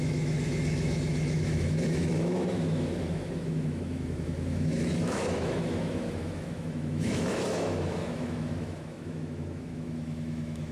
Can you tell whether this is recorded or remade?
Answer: remade